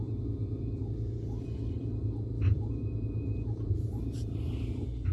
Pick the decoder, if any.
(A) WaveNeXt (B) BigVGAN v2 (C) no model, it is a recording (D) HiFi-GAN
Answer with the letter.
B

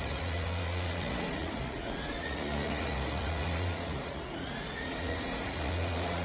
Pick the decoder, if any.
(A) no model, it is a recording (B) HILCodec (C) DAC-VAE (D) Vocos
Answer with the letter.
D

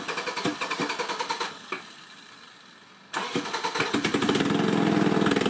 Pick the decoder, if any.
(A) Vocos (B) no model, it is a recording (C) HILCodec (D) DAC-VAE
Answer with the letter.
B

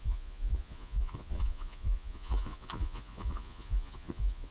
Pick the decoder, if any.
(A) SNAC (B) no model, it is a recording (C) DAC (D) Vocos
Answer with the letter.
D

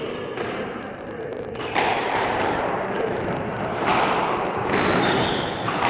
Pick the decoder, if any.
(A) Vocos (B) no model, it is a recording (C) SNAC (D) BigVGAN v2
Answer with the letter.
D